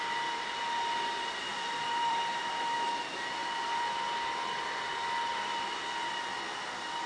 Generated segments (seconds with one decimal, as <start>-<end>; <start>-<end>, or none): 1.5-2.4; 3.4-4.8; 5.3-6.1